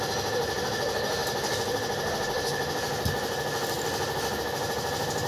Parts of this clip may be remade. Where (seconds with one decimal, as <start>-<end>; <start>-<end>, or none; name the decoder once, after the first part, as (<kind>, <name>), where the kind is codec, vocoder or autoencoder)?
none